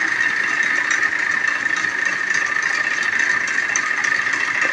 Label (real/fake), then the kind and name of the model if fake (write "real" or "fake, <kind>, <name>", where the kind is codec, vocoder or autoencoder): real